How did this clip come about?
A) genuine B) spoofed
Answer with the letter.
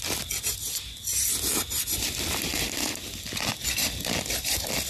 A